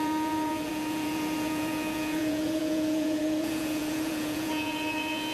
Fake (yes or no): yes